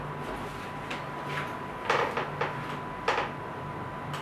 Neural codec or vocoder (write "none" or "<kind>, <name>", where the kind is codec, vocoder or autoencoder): none